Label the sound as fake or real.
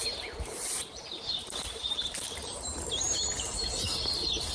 fake